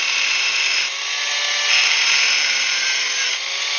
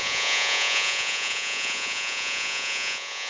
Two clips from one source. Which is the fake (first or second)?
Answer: second